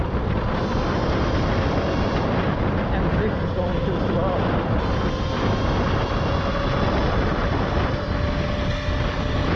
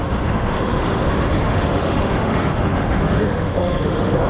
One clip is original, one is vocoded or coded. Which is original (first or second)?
first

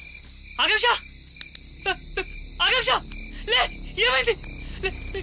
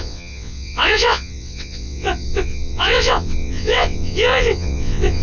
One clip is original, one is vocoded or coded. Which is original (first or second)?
first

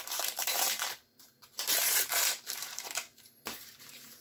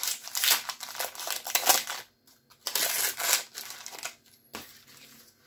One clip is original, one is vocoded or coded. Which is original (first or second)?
second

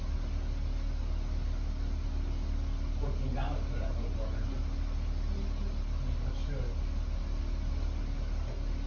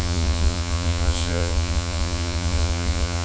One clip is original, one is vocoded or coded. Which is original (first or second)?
first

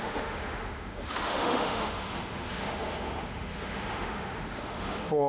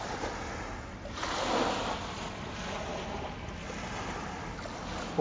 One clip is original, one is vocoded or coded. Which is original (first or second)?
second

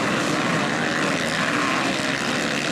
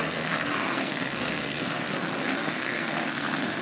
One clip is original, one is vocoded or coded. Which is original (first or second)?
first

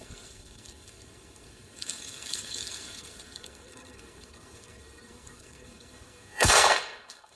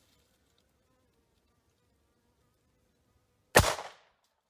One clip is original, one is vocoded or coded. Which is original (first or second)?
second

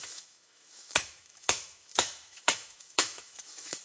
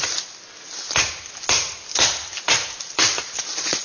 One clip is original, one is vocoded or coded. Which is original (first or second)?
second